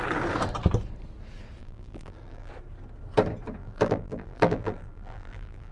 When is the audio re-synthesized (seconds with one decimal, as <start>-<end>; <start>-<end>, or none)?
1.6-2.5; 3.6-5.7